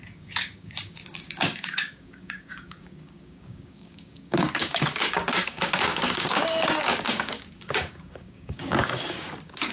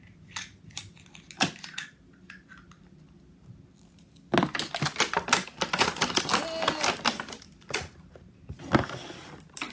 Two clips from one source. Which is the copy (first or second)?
first